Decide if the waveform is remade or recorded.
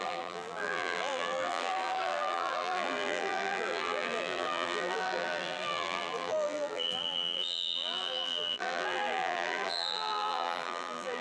remade